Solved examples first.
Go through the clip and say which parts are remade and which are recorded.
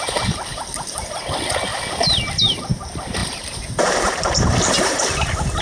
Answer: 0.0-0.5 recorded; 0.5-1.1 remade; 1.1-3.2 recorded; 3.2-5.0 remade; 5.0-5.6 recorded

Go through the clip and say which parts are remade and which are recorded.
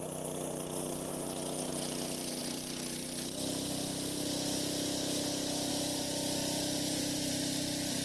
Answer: 0.0-1.1 remade; 1.1-1.7 recorded; 1.7-2.4 remade; 2.4-5.7 recorded; 5.7-8.0 remade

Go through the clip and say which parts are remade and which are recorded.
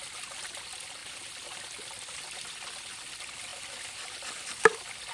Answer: 0.0-3.5 recorded; 3.5-4.3 remade; 4.3-5.1 recorded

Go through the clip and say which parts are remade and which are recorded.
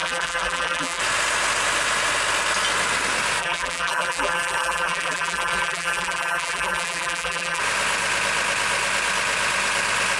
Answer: 0.0-1.0 remade; 1.0-3.4 recorded; 3.4-7.6 remade; 7.6-10.2 recorded